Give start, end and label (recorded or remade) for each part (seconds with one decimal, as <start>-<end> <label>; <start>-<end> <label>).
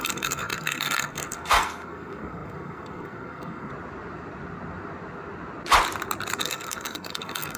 0.0-3.7 remade; 3.7-6.4 recorded; 6.4-7.6 remade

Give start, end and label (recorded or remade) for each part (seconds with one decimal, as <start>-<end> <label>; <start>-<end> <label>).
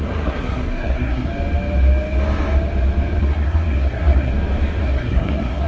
0.0-1.3 remade; 1.3-3.2 recorded; 3.2-4.3 remade; 4.3-4.8 recorded; 4.8-5.7 remade